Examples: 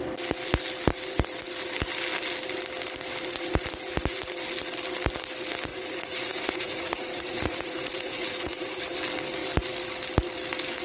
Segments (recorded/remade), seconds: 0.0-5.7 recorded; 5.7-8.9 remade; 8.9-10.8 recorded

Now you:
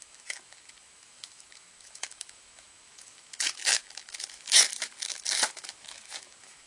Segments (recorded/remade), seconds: 0.0-6.7 remade

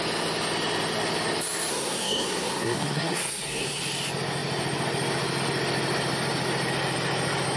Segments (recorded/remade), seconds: 0.0-1.7 recorded; 1.7-3.8 remade; 3.8-7.6 recorded

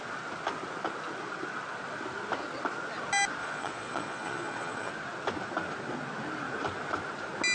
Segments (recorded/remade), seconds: 0.0-3.4 recorded; 3.4-4.9 remade; 4.9-7.5 recorded

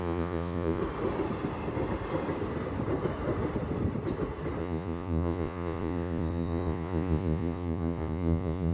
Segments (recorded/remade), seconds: 0.0-0.8 remade; 0.8-4.6 recorded; 4.6-8.7 remade